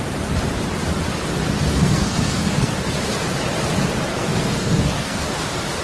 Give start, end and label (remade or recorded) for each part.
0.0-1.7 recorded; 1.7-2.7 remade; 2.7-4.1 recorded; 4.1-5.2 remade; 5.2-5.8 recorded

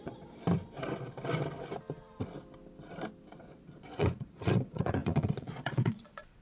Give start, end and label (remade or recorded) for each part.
0.0-0.4 remade; 0.4-3.3 recorded; 3.3-6.4 remade

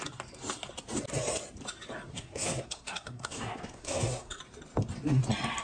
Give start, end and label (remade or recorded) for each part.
0.0-2.1 recorded; 2.1-4.4 remade; 4.4-5.6 recorded